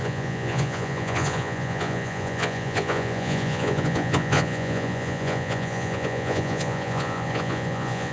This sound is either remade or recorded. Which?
remade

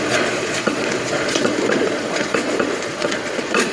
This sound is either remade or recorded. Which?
remade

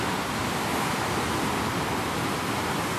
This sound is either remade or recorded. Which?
recorded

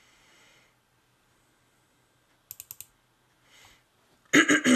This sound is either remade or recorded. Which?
recorded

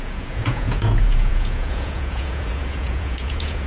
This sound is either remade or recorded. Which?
remade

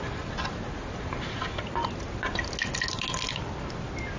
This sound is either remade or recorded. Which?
recorded